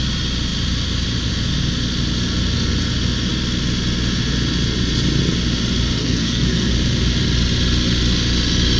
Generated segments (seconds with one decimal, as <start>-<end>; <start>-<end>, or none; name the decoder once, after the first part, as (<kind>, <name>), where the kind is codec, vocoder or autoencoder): 6.0-6.7 (codec, SNAC)

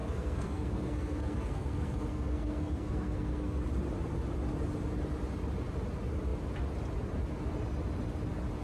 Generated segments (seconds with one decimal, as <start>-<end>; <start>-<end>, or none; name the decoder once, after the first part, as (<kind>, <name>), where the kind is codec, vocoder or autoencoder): 0.0-3.6 (codec, SNAC)

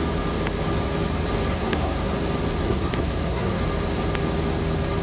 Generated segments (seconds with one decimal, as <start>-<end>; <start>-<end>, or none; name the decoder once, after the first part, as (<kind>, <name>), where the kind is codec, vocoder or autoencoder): 1.5-2.1 (codec, SNAC); 2.6-3.6

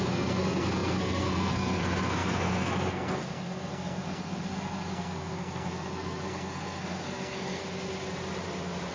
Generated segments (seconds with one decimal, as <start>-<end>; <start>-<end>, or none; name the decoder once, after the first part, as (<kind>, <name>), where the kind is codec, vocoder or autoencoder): 0.0-7.6 (codec, SNAC)

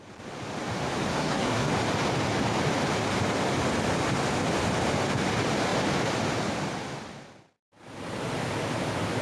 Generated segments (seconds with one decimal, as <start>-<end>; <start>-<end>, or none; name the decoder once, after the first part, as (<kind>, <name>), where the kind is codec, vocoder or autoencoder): 1.1-1.7 (codec, SNAC)

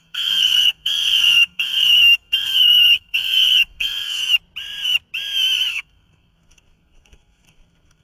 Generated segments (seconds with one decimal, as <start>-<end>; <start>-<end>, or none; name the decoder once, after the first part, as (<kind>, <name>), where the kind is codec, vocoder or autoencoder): 0.0-4.2 (codec, SNAC); 5.7-8.0

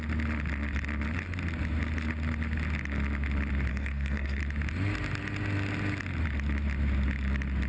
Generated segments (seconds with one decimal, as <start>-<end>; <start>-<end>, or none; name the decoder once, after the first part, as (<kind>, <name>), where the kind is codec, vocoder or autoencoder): 3.7-4.4 (codec, SNAC)